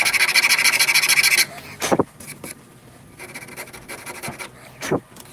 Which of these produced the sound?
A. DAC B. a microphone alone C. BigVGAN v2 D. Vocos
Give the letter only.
B